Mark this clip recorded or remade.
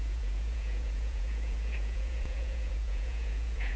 remade